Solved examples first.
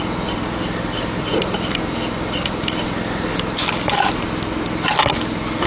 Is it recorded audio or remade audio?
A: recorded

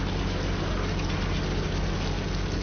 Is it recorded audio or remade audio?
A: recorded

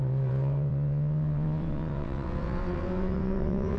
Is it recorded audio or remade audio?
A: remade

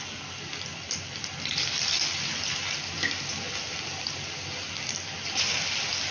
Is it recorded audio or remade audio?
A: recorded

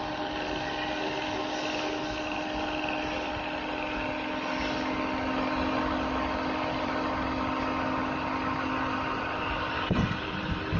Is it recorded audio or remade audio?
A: recorded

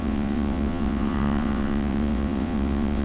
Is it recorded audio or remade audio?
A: remade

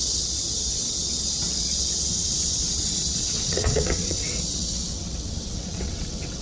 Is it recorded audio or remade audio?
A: remade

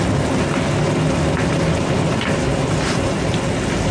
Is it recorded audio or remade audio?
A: recorded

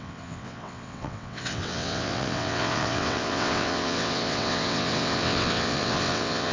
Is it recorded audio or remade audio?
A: remade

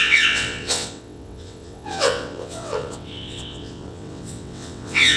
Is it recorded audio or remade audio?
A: remade